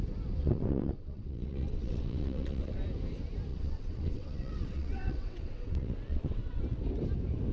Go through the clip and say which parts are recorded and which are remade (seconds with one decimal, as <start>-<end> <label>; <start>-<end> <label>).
0.0-0.4 recorded; 0.4-2.8 remade; 2.8-3.5 recorded; 3.5-6.6 remade; 6.6-7.5 recorded